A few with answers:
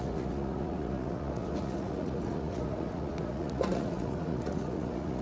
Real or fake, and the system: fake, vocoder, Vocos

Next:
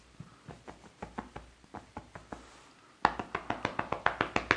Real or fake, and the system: real